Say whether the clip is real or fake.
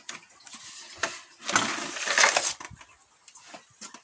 real